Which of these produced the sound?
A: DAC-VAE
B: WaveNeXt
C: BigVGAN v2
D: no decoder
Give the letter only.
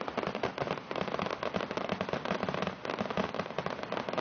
C